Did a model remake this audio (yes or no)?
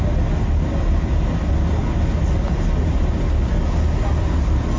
no